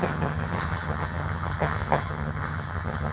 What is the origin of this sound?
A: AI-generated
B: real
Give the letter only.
A